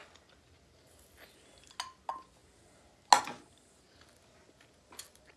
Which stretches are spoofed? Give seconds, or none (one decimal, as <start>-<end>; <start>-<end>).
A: none